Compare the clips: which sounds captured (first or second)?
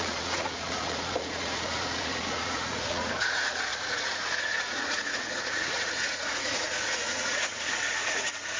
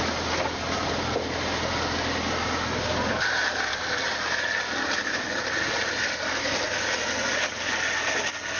second